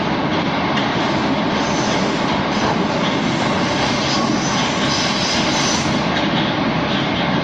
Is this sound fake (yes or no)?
no